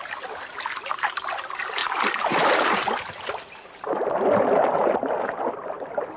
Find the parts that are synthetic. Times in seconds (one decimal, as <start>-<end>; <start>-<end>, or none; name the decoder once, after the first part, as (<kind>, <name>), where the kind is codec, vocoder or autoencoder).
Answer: none